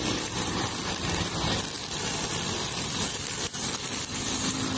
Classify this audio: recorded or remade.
recorded